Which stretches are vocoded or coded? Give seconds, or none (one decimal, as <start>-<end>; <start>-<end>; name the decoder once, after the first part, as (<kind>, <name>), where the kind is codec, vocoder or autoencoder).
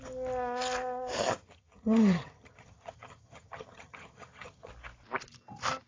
1.2-4.7 (vocoder, HiFi-GAN)